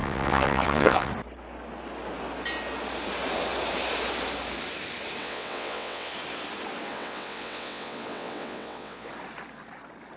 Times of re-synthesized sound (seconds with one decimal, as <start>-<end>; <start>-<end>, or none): 0.0-1.1; 5.2-6.1; 6.9-9.1